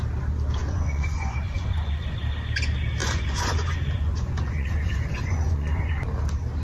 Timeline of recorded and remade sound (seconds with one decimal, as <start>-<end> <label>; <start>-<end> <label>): 0.0-0.6 recorded; 0.6-2.2 remade; 2.2-3.0 recorded; 3.0-6.0 remade; 6.0-6.6 recorded